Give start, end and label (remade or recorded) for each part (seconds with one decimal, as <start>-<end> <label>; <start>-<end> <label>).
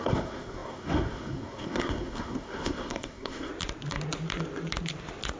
0.0-3.5 remade; 3.5-5.4 recorded